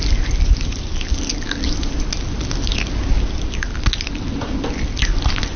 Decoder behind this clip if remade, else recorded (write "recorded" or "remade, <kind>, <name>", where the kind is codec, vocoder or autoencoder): recorded